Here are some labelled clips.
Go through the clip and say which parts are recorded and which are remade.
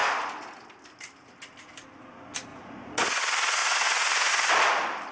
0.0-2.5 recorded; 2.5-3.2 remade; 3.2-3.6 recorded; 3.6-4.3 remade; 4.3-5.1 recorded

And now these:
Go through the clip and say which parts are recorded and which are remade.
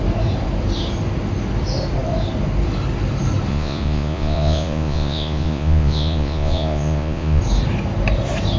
0.0-3.5 recorded; 3.5-7.4 remade; 7.4-8.6 recorded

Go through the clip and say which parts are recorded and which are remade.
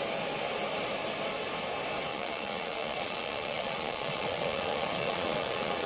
0.0-2.1 recorded; 2.1-5.9 remade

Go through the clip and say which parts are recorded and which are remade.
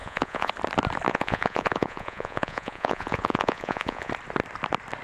0.0-0.5 remade; 0.5-1.1 recorded; 1.1-4.1 remade; 4.1-5.0 recorded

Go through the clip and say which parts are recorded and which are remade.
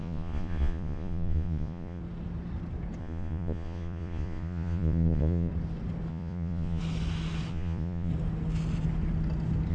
0.0-2.0 remade; 2.0-3.0 recorded; 3.0-5.5 remade; 5.5-6.1 recorded; 6.1-6.8 remade; 6.8-7.5 recorded; 7.5-8.1 remade; 8.1-9.7 recorded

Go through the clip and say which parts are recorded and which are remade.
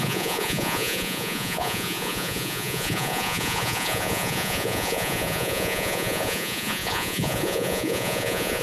0.0-8.6 remade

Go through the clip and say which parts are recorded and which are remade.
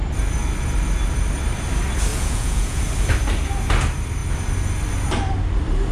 0.0-2.1 recorded; 2.1-2.8 remade; 2.8-5.9 recorded